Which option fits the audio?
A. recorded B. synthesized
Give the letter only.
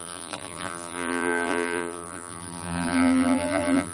B